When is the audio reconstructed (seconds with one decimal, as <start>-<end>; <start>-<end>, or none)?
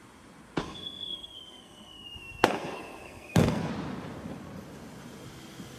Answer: 0.6-3.7